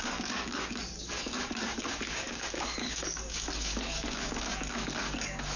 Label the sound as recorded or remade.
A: remade